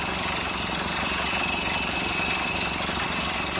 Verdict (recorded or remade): recorded